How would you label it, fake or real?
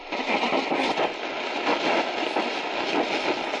real